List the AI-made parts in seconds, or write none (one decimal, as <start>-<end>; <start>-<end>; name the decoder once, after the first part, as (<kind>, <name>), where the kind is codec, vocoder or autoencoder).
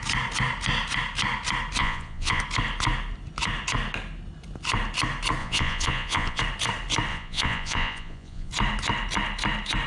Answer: 1.8-2.4 (vocoder, Vocos); 5.4-6.4; 7.1-8.5